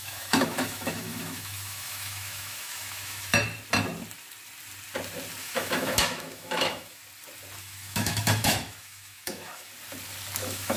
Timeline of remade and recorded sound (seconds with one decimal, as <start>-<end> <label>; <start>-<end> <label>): 0.0-3.3 remade; 3.3-5.4 recorded; 5.4-7.0 remade; 7.0-7.6 recorded; 7.6-9.7 remade; 9.7-10.4 recorded; 10.4-10.8 remade